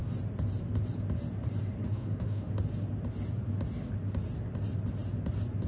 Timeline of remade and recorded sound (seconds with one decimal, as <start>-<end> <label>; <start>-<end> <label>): 0.0-1.8 recorded; 1.8-2.5 remade; 2.5-5.7 recorded